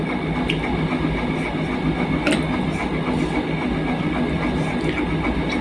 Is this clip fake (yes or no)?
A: no